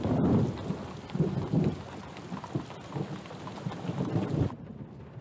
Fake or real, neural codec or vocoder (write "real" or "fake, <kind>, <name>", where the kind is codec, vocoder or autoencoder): real